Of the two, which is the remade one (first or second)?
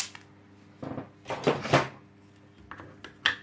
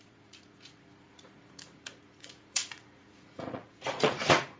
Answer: second